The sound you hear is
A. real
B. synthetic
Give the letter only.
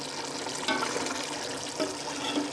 A